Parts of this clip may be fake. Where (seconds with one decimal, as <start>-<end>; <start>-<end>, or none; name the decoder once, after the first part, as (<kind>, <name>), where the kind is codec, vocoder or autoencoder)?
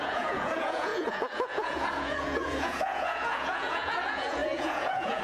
0.0-5.2 (vocoder, Vocos)